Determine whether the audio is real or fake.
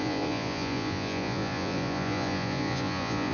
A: fake